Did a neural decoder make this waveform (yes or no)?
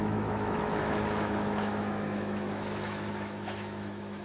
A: yes